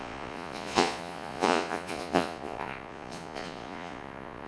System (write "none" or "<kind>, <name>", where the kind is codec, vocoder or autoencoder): vocoder, Vocos